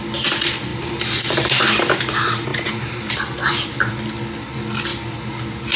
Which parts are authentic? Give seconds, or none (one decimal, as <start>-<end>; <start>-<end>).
0.0-0.7; 1.7-2.5; 3.9-5.8